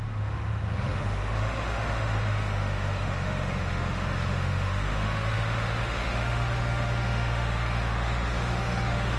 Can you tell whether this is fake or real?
fake